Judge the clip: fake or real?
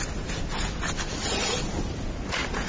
real